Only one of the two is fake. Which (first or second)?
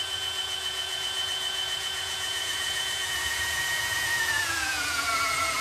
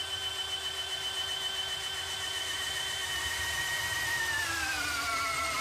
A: first